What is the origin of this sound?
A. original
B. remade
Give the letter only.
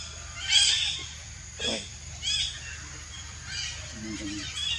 A